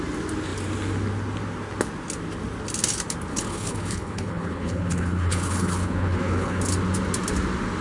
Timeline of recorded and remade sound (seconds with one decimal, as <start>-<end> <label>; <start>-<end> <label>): 0.0-3.3 recorded; 3.3-6.6 remade; 6.6-7.8 recorded